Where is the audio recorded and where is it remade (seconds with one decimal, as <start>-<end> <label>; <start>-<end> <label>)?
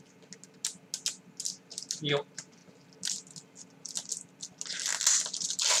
0.0-5.8 recorded